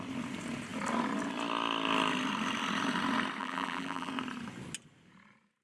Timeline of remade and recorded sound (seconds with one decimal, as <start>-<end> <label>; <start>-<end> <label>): 0.0-3.4 recorded; 3.4-4.1 remade; 4.1-5.6 recorded